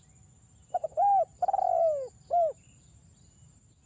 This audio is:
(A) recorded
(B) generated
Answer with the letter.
A